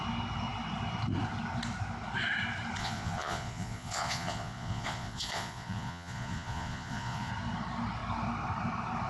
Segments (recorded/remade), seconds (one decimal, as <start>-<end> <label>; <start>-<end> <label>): 0.0-2.8 recorded; 2.8-7.3 remade; 7.3-9.1 recorded